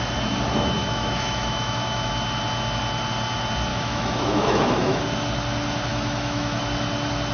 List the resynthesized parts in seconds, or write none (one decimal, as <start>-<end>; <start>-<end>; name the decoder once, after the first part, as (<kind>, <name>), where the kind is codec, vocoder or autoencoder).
0.8-2.1 (autoencoder, DAC-VAE); 3.7-5.0; 5.9-6.6